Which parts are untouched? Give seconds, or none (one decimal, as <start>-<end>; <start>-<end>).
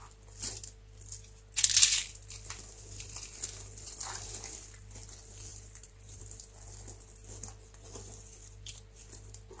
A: 0.0-5.5; 6.2-9.6